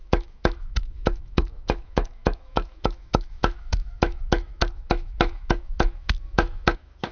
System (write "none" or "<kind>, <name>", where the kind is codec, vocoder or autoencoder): autoencoder, DAC-VAE